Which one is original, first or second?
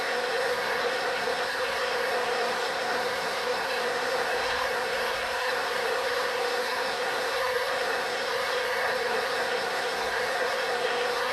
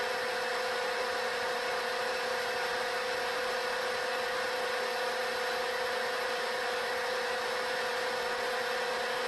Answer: second